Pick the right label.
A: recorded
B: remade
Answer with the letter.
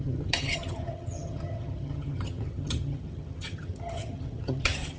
B